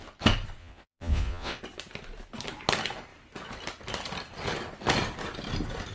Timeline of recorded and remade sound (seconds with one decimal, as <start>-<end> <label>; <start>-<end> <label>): 0.0-0.6 recorded; 0.6-1.6 remade; 1.6-5.9 recorded